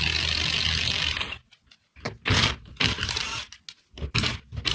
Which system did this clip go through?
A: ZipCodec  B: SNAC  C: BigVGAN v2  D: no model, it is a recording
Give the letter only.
D